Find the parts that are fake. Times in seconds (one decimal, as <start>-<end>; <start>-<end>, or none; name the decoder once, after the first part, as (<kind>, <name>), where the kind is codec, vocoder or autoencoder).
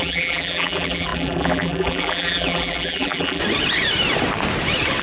0.0-3.4 (vocoder, BigVGAN v2)